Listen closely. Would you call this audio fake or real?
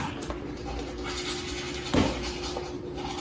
real